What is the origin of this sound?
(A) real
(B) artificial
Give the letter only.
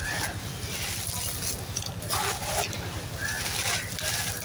A